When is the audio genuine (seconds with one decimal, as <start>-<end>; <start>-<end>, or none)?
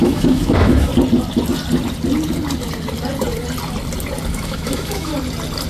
0.9-4.3; 5.1-5.7